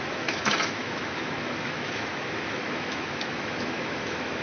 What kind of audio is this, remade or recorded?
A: remade